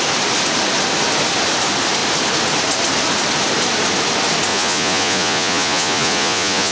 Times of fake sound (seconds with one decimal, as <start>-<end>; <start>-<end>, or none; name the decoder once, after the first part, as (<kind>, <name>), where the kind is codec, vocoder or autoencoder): 4.5-6.7 (vocoder, Vocos)